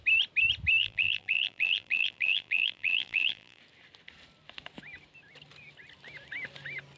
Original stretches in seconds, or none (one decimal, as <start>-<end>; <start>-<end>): 0.0-0.8; 3.6-7.0